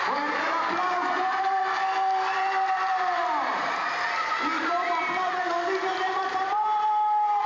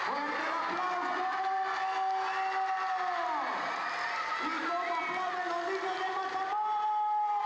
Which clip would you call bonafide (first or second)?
second